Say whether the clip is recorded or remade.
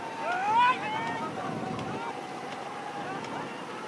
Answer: recorded